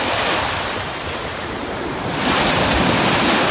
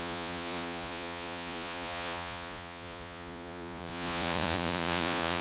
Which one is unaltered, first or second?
first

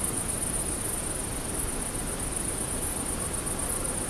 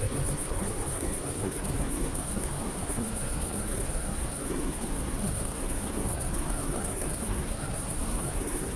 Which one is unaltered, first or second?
first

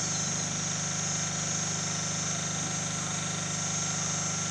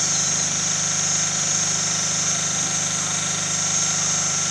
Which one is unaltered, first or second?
first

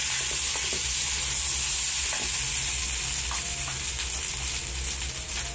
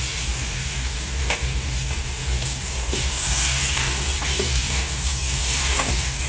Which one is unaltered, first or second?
first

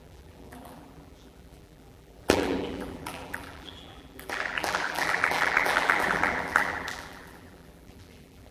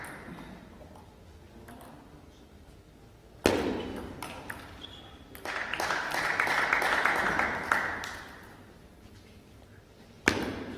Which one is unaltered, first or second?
second